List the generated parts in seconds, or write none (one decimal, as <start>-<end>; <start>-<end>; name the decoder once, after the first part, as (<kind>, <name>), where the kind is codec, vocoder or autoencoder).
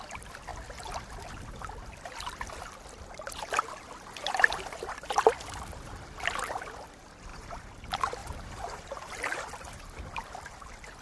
7.3-7.8 (vocoder, BigVGAN v2); 8.2-9.1